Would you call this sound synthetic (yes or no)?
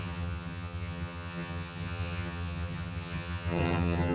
yes